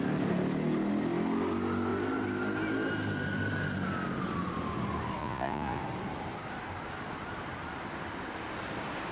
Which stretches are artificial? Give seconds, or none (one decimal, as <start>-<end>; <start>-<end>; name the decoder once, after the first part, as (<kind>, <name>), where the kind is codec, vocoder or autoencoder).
5.2-5.8 (vocoder, Vocos)